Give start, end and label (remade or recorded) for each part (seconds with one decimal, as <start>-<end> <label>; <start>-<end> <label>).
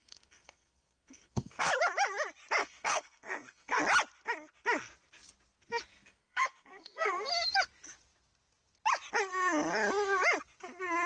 0.0-1.7 remade; 1.7-2.6 recorded; 2.6-3.8 remade; 3.8-5.9 recorded; 5.9-7.3 remade; 7.3-11.1 recorded